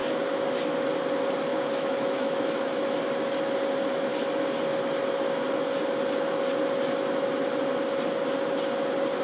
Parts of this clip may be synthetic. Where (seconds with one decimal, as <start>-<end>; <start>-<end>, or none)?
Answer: 1.5-2.6